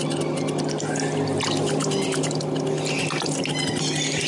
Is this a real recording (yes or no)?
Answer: yes